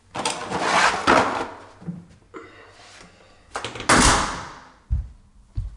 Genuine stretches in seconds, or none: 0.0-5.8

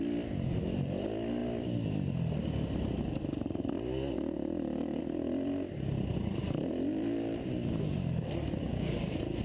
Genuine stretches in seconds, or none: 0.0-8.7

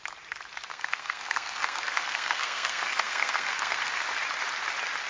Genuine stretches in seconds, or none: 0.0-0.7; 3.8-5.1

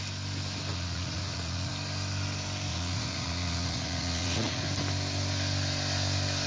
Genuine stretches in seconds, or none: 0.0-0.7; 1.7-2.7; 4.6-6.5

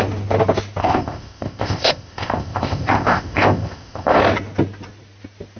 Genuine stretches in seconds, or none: 0.0-0.8; 4.2-5.6

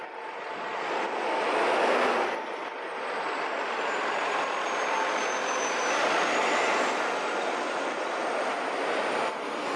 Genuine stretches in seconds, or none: 0.0-9.8

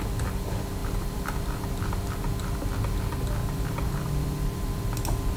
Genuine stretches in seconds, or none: 0.0-0.8; 1.4-3.4; 5.0-5.4